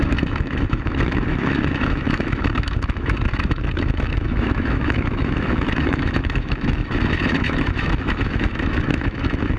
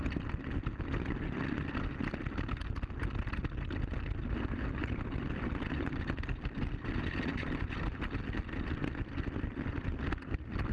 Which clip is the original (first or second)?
second